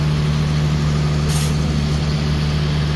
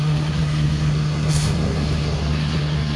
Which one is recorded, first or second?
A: first